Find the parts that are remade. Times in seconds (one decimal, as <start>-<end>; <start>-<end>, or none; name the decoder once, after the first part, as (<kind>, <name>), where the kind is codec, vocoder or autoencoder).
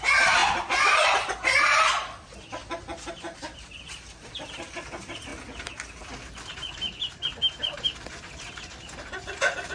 0.0-0.4 (vocoder, BigVGAN v2); 3.1-5.3; 6.5-9.7